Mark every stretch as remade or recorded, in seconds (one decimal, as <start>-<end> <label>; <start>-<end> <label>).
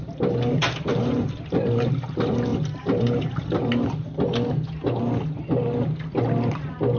0.0-0.9 recorded; 0.9-1.9 remade; 1.9-7.0 recorded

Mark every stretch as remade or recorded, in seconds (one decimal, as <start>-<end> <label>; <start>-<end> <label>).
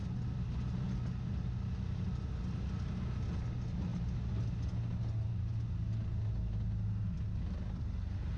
0.0-8.4 recorded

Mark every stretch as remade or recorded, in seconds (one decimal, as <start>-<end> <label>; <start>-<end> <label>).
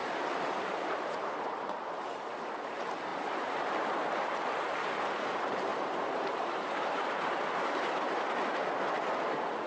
0.0-1.9 remade; 1.9-3.1 recorded; 3.1-3.7 remade; 3.7-5.7 recorded; 5.7-8.0 remade; 8.0-9.7 recorded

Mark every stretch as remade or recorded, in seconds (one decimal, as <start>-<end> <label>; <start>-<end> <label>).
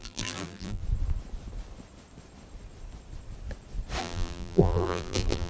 0.0-0.8 remade; 0.8-4.0 recorded; 4.0-5.5 remade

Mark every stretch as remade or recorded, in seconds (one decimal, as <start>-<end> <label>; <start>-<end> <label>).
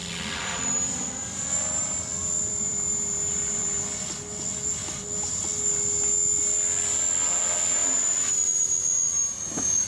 0.0-3.8 remade; 3.8-7.8 recorded; 7.8-9.4 remade; 9.4-9.9 recorded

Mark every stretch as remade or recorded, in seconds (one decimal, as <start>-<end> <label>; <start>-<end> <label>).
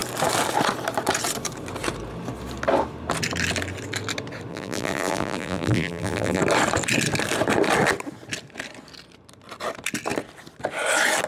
0.0-4.5 recorded; 4.5-6.4 remade; 6.4-11.3 recorded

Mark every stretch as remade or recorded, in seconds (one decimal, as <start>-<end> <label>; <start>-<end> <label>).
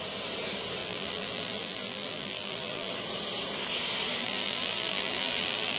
0.0-0.8 recorded; 0.8-2.9 remade; 2.9-4.2 recorded; 4.2-5.8 remade